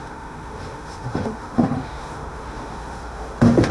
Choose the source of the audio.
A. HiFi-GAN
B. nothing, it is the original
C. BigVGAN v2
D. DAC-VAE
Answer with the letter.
D